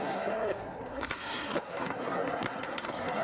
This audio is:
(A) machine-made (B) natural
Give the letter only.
A